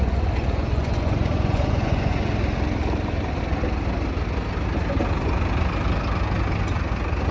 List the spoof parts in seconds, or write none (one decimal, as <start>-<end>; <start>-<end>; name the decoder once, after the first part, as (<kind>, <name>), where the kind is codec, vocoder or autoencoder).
0.0-2.3 (vocoder, Vocos)